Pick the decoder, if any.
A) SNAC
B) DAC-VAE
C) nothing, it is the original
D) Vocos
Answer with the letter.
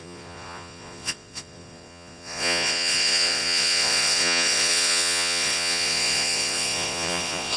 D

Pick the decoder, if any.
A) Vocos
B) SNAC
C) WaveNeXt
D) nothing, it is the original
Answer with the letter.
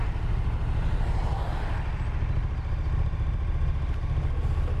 D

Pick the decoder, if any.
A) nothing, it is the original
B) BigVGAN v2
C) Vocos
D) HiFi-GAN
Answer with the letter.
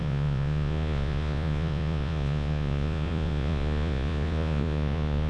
C